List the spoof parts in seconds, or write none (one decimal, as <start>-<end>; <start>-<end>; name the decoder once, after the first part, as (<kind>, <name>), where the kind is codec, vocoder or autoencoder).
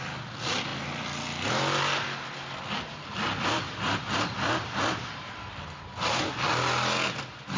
none